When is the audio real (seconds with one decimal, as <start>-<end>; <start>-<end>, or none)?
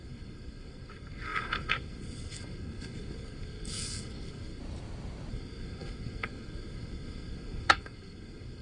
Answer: 4.6-5.3